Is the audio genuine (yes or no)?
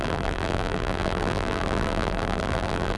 no